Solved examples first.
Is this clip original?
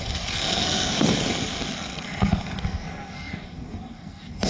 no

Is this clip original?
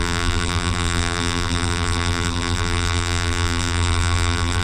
no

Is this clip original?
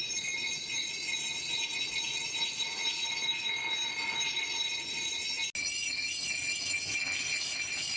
yes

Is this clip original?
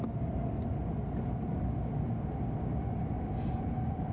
yes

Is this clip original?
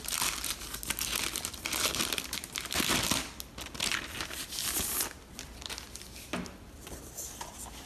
yes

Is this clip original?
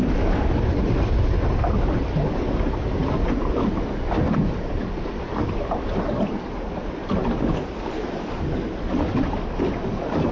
yes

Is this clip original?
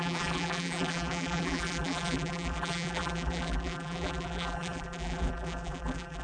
no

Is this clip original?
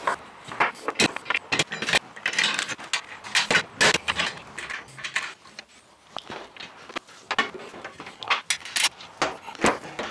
yes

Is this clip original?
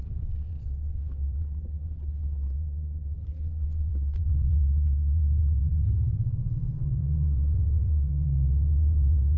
no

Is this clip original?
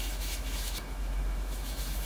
no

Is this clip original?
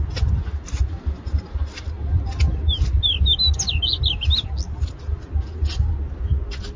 yes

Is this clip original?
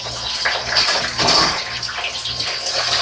yes